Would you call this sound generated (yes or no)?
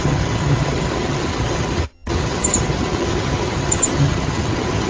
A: yes